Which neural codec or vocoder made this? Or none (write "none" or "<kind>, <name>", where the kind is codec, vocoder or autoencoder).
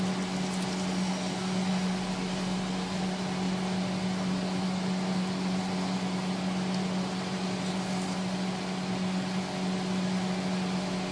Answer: none